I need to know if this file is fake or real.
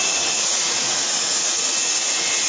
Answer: fake